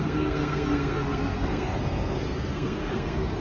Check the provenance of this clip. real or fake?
fake